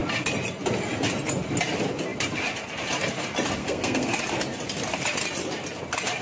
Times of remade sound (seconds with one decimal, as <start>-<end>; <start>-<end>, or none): 3.6-4.2

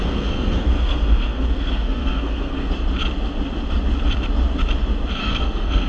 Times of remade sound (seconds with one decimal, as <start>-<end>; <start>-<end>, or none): 0.0-2.7; 5.2-5.9

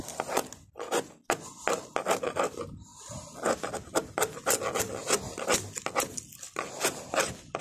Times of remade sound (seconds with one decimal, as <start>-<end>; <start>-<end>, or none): none

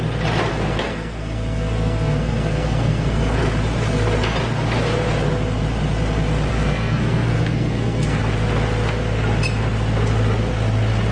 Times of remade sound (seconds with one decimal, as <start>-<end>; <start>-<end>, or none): 0.5-3.4; 6.5-8.2

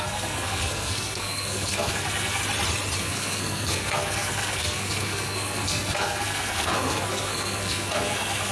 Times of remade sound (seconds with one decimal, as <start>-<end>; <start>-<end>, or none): 0.0-2.4; 3.0-8.5

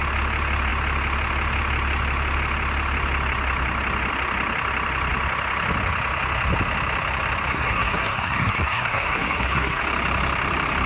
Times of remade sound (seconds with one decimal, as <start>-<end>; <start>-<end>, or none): 7.5-9.8

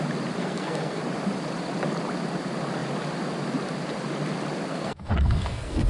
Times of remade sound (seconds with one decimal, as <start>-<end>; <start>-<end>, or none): 0.4-1.0; 4.7-5.9